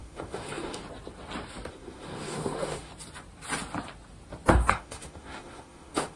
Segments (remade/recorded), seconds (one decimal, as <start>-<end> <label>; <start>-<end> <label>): 0.0-0.8 remade; 0.8-1.7 recorded; 1.7-2.9 remade; 2.9-4.5 recorded; 4.5-6.2 remade